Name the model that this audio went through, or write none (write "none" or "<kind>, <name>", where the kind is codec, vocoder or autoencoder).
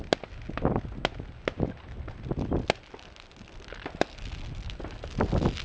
none